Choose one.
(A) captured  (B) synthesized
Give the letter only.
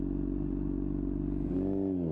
A